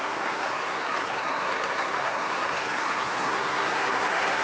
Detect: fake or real fake